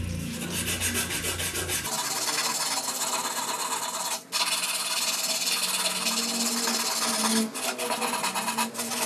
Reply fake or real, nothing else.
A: real